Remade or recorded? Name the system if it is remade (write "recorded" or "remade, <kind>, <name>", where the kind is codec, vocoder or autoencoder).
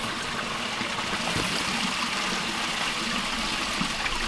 recorded